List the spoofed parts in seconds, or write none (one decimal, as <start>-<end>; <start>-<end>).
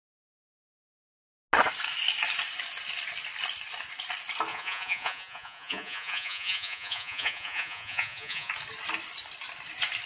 4.5-8.5